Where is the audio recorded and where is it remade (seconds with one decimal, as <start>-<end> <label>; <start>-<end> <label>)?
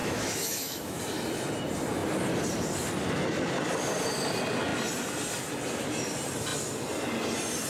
0.0-1.0 remade; 1.0-7.7 recorded